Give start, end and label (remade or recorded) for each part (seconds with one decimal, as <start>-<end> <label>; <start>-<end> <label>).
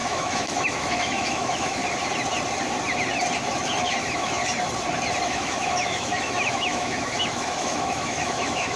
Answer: 0.0-1.8 remade; 1.8-3.8 recorded; 3.8-4.4 remade; 4.4-5.2 recorded; 5.2-8.8 remade